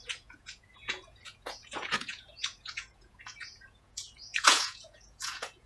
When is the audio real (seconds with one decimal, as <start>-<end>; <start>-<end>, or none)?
none